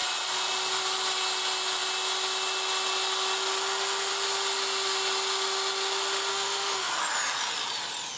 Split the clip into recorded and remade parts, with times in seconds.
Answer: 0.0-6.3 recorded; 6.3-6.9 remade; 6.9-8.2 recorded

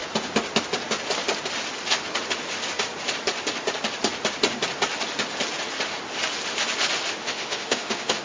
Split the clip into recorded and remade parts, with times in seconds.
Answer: 0.0-7.2 recorded; 7.2-8.2 remade

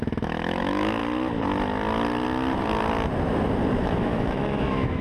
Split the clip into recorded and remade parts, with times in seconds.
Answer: 0.0-1.0 remade; 1.0-3.8 recorded; 3.8-5.0 remade